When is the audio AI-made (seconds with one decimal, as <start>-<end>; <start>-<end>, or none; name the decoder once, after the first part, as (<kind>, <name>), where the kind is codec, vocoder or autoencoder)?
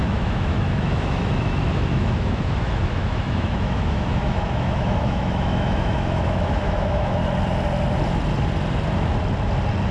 0.0-7.2 (autoencoder, DAC-VAE)